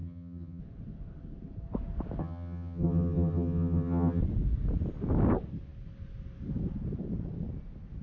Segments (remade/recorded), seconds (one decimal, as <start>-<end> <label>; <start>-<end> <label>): 0.0-0.6 remade; 0.6-2.2 recorded; 2.2-4.2 remade; 4.2-8.0 recorded